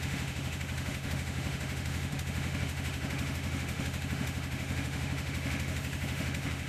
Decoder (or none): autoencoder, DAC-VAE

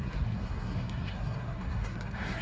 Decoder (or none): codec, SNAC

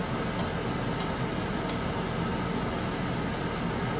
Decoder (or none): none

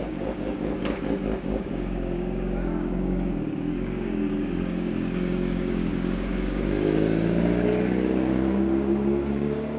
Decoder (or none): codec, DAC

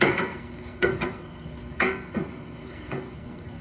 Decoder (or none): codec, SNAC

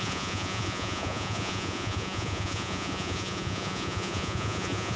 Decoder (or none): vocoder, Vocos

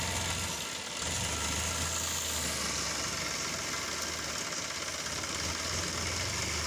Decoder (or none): none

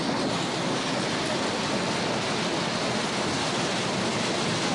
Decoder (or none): none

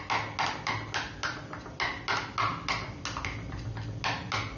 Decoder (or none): none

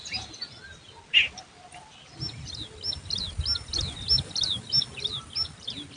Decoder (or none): none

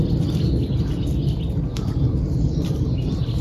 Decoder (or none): none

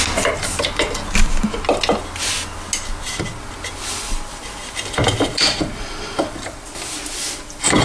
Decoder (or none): none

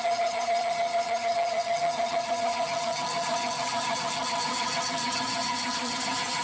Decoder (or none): vocoder, HiFi-GAN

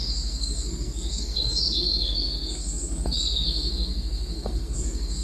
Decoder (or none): codec, SNAC